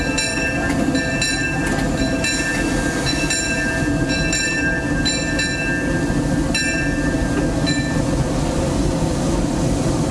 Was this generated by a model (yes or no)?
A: no